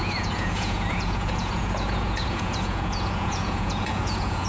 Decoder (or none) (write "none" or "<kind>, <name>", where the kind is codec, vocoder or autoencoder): vocoder, Vocos